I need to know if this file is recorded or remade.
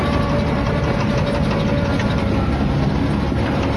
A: recorded